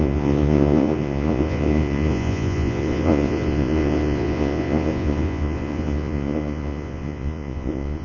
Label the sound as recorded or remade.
remade